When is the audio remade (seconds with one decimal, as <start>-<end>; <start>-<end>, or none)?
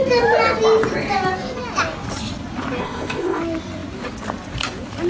2.8-3.4